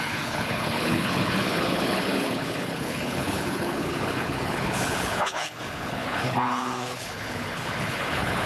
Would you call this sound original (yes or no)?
no